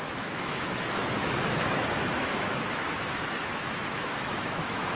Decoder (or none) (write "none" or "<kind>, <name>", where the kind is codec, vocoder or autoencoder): autoencoder, DAC-VAE